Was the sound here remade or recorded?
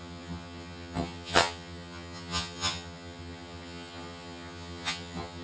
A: remade